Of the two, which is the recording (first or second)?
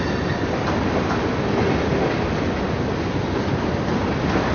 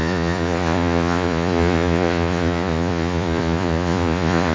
first